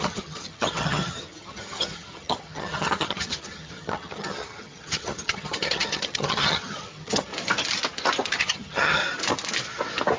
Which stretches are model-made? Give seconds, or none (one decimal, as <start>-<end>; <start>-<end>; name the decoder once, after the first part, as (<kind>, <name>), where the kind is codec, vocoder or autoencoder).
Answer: 0.0-7.3 (vocoder, HiFi-GAN); 8.4-9.0